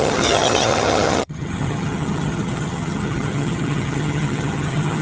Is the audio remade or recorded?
remade